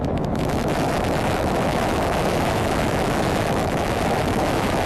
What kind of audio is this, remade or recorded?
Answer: remade